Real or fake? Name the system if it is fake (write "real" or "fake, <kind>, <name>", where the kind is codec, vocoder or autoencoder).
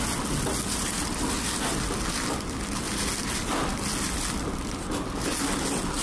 real